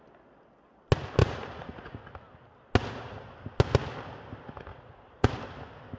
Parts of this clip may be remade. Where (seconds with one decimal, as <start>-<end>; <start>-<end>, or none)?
1.2-2.0; 2.8-3.3; 4.7-5.3